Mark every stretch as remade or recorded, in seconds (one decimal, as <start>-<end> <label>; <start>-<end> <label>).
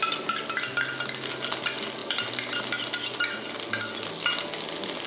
0.0-5.1 recorded